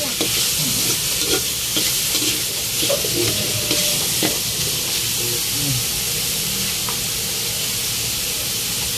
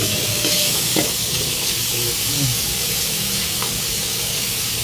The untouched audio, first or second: first